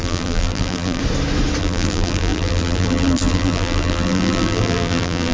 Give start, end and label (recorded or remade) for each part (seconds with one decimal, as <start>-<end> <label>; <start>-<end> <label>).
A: 0.0-1.0 remade; 1.0-1.6 recorded; 1.6-5.3 remade